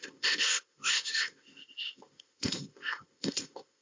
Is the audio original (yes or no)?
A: no